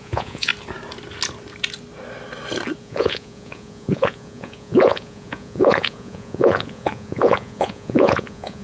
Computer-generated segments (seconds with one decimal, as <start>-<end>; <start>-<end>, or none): 0.0-0.5; 2.8-8.6